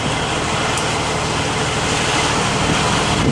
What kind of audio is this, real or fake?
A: real